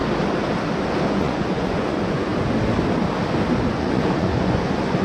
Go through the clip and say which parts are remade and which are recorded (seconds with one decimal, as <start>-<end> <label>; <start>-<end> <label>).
0.0-1.1 recorded; 1.1-2.3 remade; 2.3-3.7 recorded; 3.7-5.0 remade